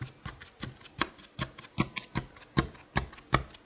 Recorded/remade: recorded